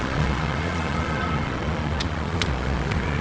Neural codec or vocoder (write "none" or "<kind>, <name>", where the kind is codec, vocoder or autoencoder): vocoder, Vocos